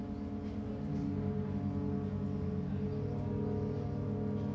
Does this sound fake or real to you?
real